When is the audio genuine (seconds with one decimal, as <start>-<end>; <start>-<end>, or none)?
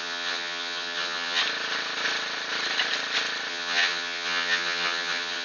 1.4-3.5